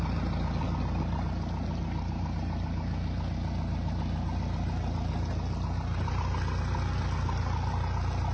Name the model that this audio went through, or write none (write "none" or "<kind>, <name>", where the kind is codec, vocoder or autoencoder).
none